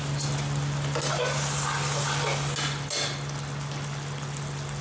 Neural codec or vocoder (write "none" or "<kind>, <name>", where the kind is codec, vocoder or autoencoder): none